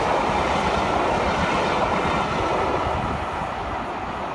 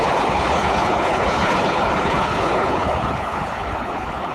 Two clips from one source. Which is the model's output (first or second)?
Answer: second